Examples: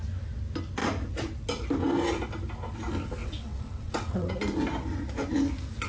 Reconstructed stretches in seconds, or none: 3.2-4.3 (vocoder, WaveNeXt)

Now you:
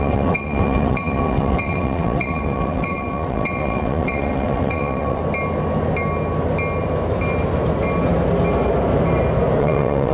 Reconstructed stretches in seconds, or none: 0.0-5.2 (vocoder, WaveNeXt); 9.6-10.1

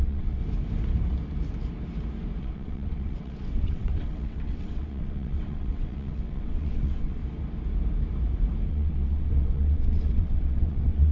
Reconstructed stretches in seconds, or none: 0.0-0.4 (vocoder, WaveNeXt); 2.4-7.2; 8.7-11.1

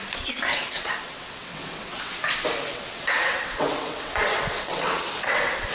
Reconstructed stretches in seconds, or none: 0.5-2.1 (vocoder, WaveNeXt); 2.7-5.7